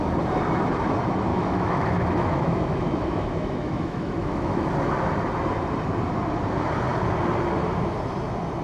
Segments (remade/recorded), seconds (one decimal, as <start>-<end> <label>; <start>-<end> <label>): 0.0-1.3 recorded; 1.3-4.7 remade; 4.7-8.6 recorded